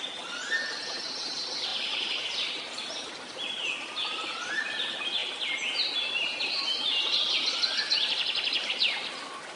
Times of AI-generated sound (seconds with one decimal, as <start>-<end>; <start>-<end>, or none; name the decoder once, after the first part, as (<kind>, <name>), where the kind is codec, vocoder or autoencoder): 1.7-4.5 (vocoder, BigVGAN v2)